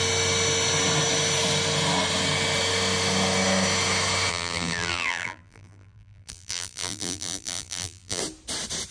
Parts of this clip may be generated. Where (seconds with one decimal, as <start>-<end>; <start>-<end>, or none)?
4.3-8.2